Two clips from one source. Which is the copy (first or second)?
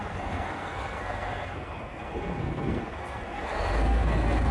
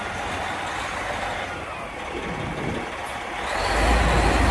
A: first